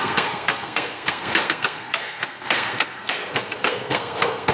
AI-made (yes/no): yes